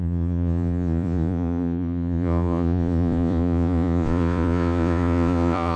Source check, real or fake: fake